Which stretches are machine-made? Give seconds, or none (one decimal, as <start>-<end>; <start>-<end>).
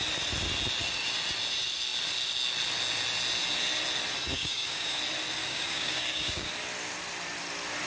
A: 4.3-5.0; 5.4-6.5